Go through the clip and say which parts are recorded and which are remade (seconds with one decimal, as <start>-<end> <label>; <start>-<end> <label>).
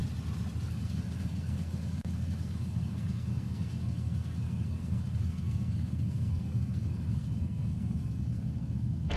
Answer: 0.0-0.7 recorded; 0.7-9.2 remade